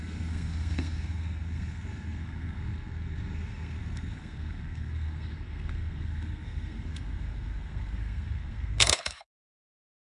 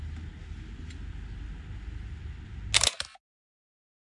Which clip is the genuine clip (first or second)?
second